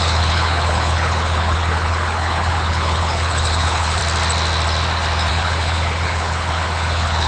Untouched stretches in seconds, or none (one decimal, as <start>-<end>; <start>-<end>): 4.0-5.3